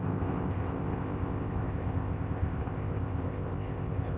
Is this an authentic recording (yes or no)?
no